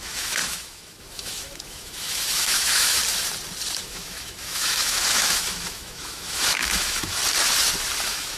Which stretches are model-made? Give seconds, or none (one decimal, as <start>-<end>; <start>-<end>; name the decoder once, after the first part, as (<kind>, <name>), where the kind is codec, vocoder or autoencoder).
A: 0.0-3.0 (autoencoder, DAC-VAE); 3.8-7.2; 8.0-8.4